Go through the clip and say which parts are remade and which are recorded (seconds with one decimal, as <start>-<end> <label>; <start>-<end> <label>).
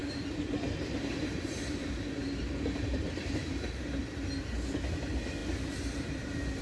0.0-4.0 remade; 4.0-6.6 recorded